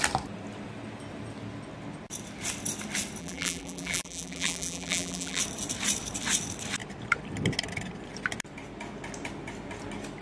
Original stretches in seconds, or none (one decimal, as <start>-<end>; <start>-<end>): 0.0-3.2; 5.4-10.2